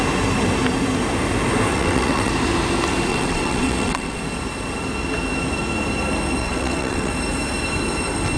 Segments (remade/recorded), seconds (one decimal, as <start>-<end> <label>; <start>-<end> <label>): 0.0-1.7 recorded; 1.7-2.3 remade; 2.3-3.1 recorded; 3.1-4.2 remade; 4.2-6.4 recorded; 6.4-7.1 remade; 7.1-8.4 recorded